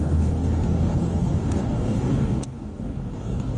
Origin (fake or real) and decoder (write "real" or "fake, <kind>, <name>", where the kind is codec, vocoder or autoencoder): fake, codec, DAC